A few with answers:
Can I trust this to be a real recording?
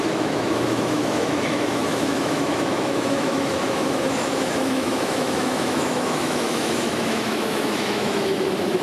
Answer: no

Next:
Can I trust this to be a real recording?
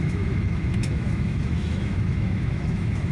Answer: no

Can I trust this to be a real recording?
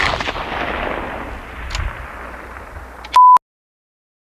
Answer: yes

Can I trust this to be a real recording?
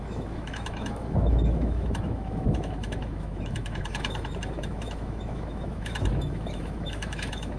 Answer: no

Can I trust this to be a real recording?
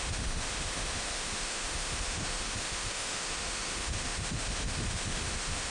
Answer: no